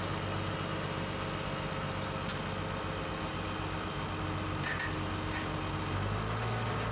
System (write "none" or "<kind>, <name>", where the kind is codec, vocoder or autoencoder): none